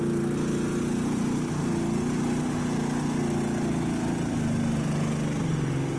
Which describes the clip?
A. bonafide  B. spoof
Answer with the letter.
A